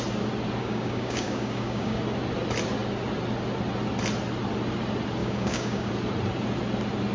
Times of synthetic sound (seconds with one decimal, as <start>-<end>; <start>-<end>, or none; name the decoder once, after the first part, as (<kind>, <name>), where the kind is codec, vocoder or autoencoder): 0.6-2.0 (codec, DAC); 5.2-5.9